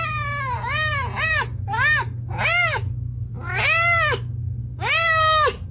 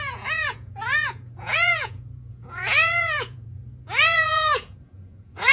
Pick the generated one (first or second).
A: second